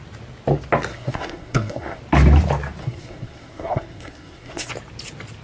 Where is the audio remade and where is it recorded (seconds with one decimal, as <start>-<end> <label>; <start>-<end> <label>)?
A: 0.0-0.9 recorded; 0.9-2.0 remade; 2.0-2.8 recorded; 2.8-4.7 remade; 4.7-5.4 recorded

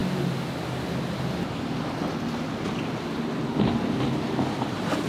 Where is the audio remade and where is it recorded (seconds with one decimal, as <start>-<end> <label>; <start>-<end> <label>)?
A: 0.0-5.1 recorded

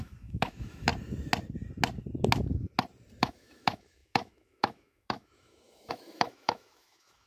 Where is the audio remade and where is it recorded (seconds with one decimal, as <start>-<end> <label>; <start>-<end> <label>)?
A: 0.0-0.9 remade; 0.9-3.2 recorded; 3.2-7.3 remade

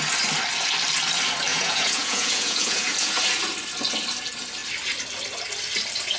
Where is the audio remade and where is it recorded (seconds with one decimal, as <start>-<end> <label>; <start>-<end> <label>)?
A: 0.0-1.5 recorded; 1.5-3.2 remade; 3.2-6.2 recorded

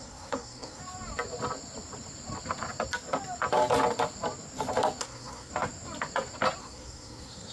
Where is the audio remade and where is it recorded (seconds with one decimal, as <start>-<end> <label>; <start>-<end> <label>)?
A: 0.0-0.8 remade; 0.8-5.0 recorded; 5.0-5.5 remade; 5.5-6.6 recorded; 6.6-7.5 remade

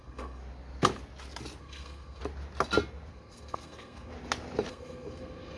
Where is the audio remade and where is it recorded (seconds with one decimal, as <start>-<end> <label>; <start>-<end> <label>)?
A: 0.0-0.4 remade; 0.4-1.6 recorded; 1.6-2.2 remade; 2.2-3.1 recorded; 3.1-4.1 remade; 4.1-4.7 recorded; 4.7-5.6 remade